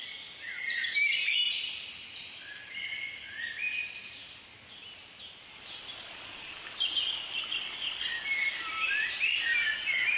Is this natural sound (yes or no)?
yes